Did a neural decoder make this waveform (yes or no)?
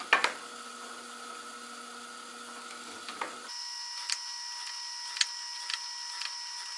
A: no